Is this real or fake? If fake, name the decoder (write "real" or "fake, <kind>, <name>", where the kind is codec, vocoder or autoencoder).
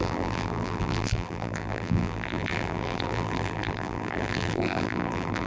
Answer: fake, vocoder, BigVGAN v2